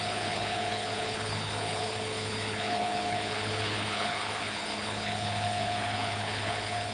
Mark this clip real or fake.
fake